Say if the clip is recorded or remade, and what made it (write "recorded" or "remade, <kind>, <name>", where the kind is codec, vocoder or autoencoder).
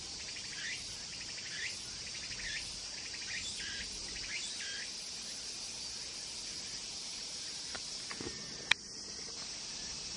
recorded